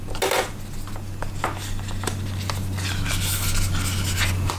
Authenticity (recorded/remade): recorded